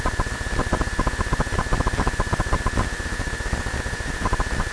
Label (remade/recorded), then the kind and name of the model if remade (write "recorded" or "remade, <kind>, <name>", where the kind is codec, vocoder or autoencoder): recorded